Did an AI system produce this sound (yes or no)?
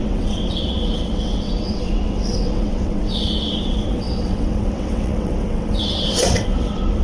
yes